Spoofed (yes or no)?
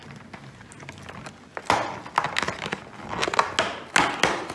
no